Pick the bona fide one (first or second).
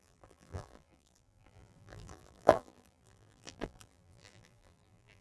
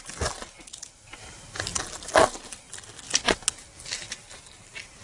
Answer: second